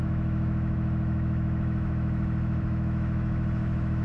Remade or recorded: remade